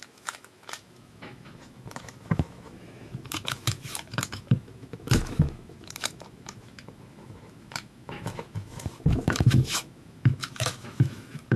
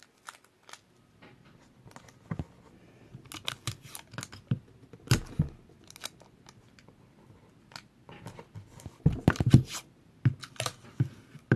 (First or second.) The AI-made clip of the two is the first